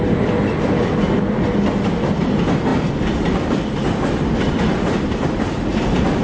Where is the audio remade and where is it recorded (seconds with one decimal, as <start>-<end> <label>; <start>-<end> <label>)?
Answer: 0.0-6.2 recorded